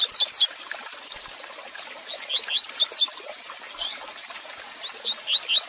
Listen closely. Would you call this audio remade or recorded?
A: recorded